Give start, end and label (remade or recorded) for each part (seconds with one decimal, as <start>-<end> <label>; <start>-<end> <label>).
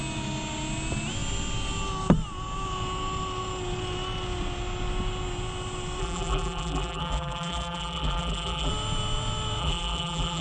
0.0-6.0 recorded; 6.0-8.7 remade; 8.7-9.6 recorded; 9.6-10.4 remade